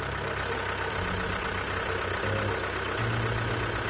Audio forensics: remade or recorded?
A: recorded